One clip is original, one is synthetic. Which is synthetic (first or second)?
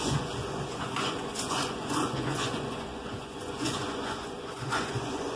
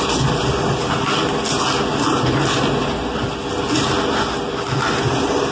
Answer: first